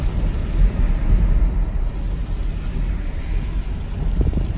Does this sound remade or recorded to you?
recorded